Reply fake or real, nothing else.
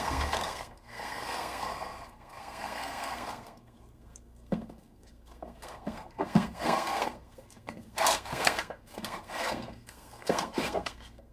fake